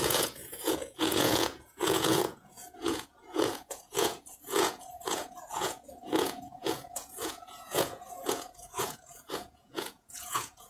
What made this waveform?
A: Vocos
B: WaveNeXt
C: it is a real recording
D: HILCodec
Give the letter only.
A